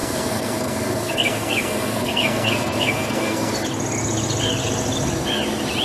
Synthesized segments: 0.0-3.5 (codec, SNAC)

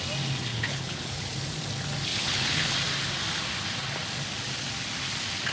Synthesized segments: 0.5-1.3 (codec, HILCodec); 2.1-2.7

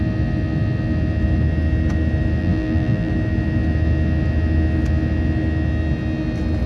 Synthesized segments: 2.4-3.1 (vocoder, BigVGAN v2)

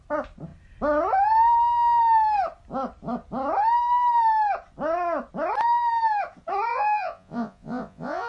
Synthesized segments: 6.7-8.3 (vocoder, Vocos)

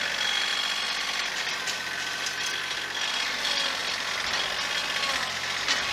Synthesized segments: none